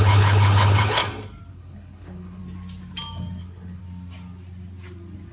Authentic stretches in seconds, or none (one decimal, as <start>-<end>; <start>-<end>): 1.0-1.5; 2.4-3.4; 3.8-5.3

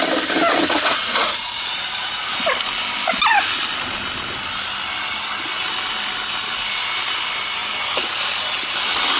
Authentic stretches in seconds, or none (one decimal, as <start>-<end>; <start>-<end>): 0.0-0.5; 2.4-9.2

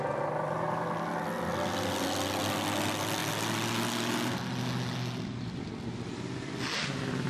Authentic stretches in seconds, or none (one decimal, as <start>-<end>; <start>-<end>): 0.0-7.3

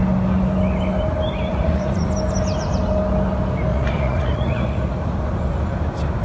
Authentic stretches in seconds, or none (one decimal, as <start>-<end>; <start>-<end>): 0.0-1.5; 2.1-3.7; 4.8-6.2